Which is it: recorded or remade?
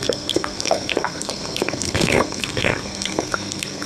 remade